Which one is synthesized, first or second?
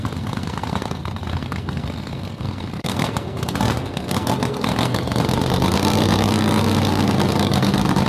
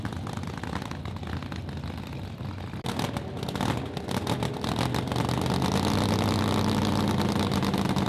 first